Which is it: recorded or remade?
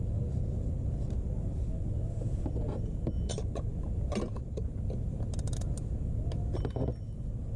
recorded